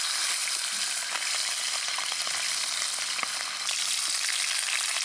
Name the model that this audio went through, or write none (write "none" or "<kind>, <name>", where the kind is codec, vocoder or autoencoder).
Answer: none